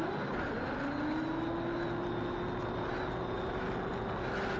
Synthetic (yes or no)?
no